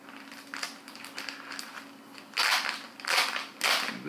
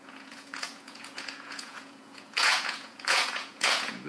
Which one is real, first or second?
first